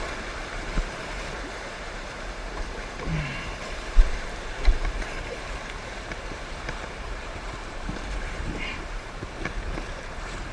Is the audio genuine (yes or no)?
no